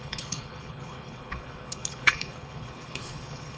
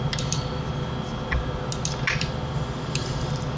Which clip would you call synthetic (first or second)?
first